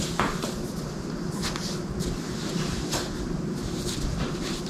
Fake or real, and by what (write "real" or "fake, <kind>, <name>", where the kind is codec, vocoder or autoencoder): real